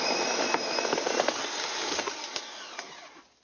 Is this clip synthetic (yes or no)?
no